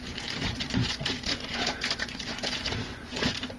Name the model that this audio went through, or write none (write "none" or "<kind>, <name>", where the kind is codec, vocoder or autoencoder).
vocoder, Vocos